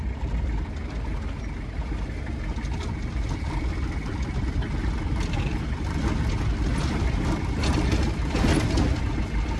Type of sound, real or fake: real